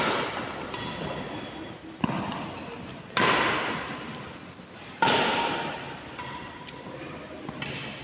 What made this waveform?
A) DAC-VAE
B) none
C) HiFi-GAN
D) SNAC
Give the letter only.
B